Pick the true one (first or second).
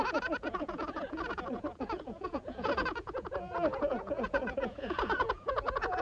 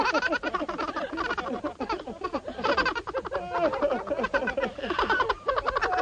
second